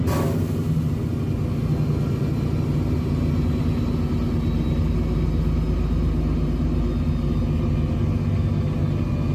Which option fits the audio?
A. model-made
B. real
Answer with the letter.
B